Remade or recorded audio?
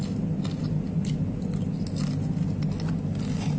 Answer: recorded